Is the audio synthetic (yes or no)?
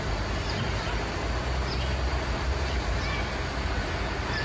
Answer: no